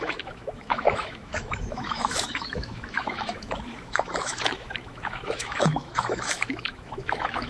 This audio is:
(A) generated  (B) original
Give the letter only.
A